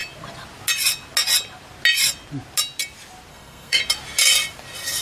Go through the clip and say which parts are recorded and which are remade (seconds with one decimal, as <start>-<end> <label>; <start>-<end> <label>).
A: 0.0-3.3 recorded; 3.3-3.8 remade; 3.8-5.0 recorded